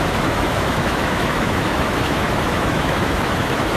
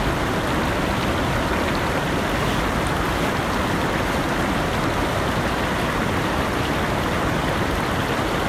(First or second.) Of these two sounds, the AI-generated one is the first